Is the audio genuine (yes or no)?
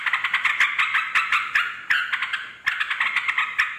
yes